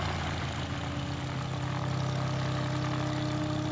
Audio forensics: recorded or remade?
recorded